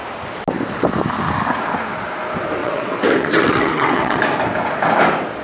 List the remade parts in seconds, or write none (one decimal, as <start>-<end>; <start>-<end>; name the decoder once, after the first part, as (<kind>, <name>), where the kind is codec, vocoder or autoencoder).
2.6-4.2 (vocoder, WaveNeXt)